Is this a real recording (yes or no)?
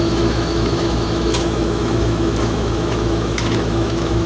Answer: no